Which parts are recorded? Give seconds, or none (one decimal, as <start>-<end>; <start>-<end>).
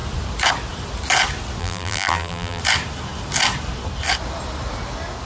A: 0.0-1.6; 2.6-5.3